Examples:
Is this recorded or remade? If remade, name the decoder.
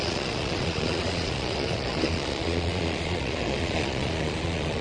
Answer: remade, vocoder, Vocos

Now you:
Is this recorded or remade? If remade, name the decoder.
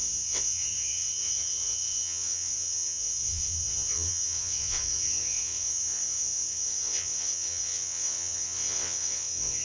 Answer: remade, vocoder, WaveNeXt